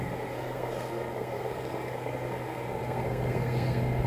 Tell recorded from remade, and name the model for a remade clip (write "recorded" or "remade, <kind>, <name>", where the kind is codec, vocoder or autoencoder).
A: remade, codec, SNAC